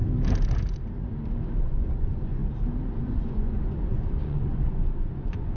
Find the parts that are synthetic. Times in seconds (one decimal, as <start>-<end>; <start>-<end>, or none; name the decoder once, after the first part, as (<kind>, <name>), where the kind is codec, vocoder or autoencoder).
1.6-2.4 (vocoder, Vocos); 3.0-5.6